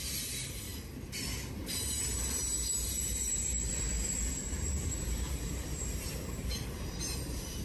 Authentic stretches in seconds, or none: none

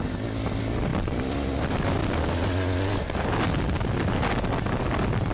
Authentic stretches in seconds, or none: 0.0-5.3

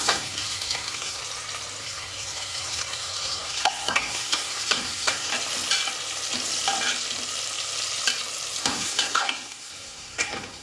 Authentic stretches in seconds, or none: 1.2-1.8; 5.3-8.6

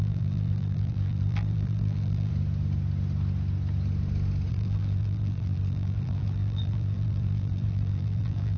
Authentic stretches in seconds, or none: 2.3-4.5

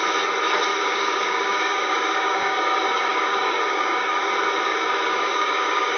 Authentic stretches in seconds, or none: 0.0-0.7; 4.3-4.7

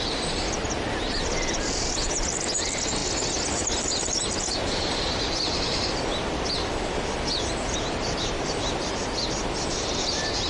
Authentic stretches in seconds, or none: none